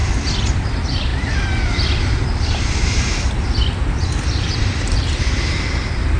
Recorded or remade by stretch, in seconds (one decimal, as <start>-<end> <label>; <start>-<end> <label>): 0.0-0.5 recorded; 0.5-1.1 remade; 1.1-4.8 recorded; 4.8-6.2 remade